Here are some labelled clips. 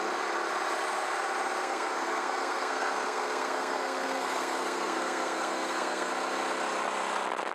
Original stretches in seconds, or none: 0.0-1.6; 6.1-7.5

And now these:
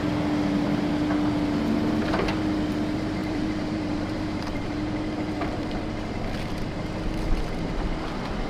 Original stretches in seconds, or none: 0.0-3.2; 5.8-8.5

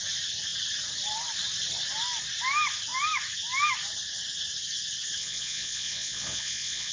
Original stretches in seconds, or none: 0.0-5.2